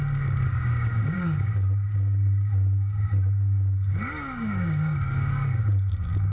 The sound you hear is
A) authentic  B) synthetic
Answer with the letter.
B